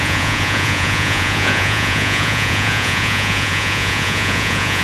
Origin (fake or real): fake